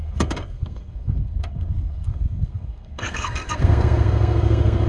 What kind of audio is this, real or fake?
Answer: fake